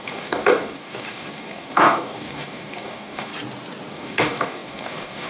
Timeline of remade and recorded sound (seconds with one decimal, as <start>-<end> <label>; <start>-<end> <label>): 0.0-3.3 remade; 3.3-3.9 recorded; 3.9-5.3 remade